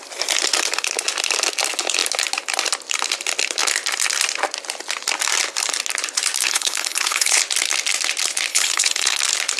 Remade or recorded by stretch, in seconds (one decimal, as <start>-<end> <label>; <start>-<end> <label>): 0.0-6.4 recorded; 6.4-7.4 remade; 7.4-8.5 recorded; 8.5-9.2 remade; 9.2-9.6 recorded